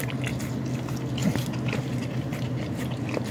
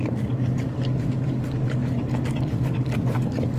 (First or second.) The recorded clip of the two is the first